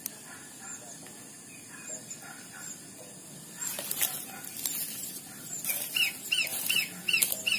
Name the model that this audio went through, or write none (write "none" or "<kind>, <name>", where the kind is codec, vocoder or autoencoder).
none